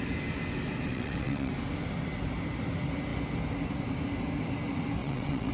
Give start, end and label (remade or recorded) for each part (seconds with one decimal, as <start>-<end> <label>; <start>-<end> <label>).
0.0-0.9 recorded; 0.9-1.5 remade; 1.5-5.0 recorded; 5.0-5.5 remade